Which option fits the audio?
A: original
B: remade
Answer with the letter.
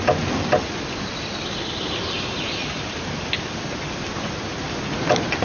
A